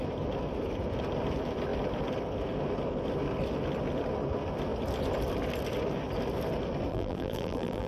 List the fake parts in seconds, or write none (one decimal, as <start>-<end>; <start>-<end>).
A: 6.9-7.9